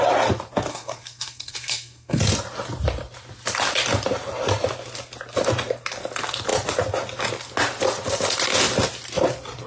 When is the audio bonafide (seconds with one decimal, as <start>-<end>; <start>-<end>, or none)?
0.0-0.7; 2.2-9.7